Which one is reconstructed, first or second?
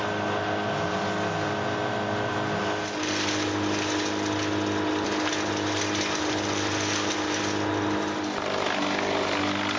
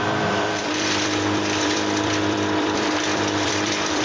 second